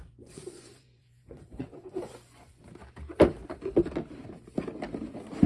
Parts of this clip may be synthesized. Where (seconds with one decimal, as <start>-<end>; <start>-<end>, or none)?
0.0-2.6